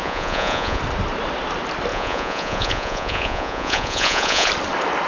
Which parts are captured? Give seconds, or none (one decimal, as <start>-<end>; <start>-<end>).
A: 0.8-1.9; 4.5-5.1